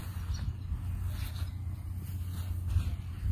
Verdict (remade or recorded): recorded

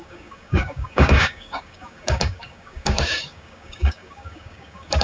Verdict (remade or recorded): remade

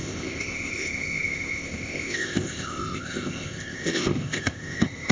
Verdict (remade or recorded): remade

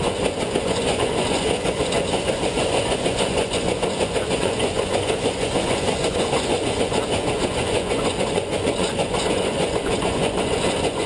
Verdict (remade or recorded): remade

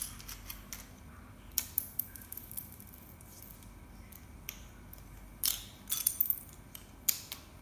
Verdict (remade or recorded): recorded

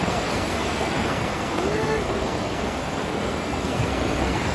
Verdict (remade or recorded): remade